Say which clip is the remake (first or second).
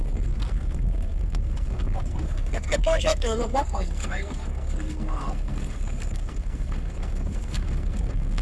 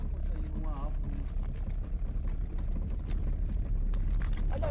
first